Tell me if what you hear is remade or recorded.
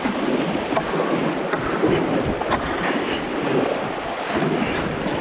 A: recorded